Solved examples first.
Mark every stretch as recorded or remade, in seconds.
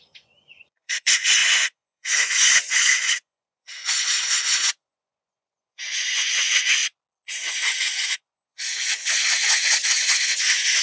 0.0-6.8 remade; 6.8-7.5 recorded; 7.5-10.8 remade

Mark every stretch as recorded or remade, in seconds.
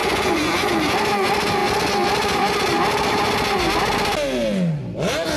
0.0-0.7 remade; 0.7-5.4 recorded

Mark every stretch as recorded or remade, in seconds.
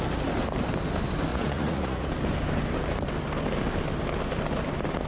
0.0-1.3 recorded; 1.3-2.1 remade; 2.1-5.1 recorded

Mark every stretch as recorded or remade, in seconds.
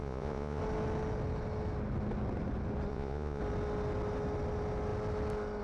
0.0-0.6 remade; 0.6-2.9 recorded; 2.9-3.4 remade; 3.4-5.6 recorded